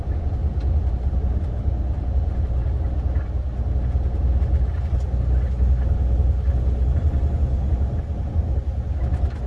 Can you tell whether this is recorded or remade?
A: recorded